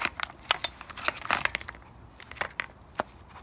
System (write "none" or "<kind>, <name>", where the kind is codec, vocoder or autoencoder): none